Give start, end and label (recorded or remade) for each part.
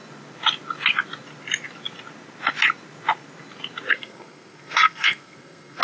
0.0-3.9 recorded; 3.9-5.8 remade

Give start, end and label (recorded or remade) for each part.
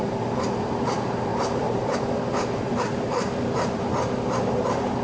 0.0-5.0 remade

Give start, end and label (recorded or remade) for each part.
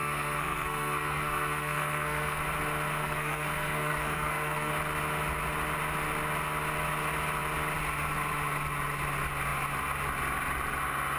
0.0-2.4 remade; 2.4-3.0 recorded; 3.0-4.7 remade; 4.7-11.2 recorded